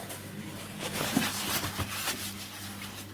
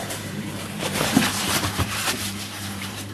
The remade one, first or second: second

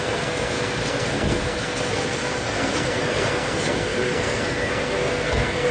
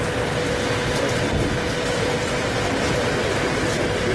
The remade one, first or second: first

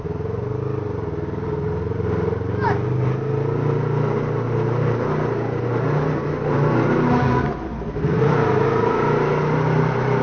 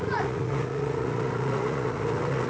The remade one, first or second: second